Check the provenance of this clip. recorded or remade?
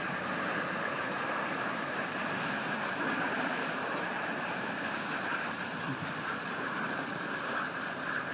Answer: remade